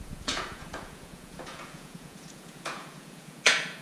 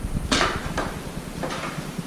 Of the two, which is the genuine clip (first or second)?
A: second